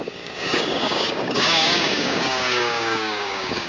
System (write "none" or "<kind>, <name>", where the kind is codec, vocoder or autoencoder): codec, DAC